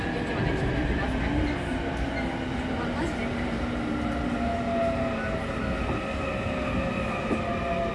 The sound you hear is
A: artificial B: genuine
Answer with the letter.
B